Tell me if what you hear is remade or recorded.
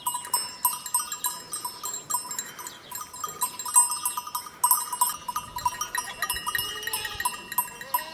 recorded